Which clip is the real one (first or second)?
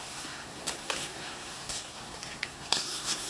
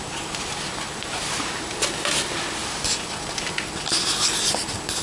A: second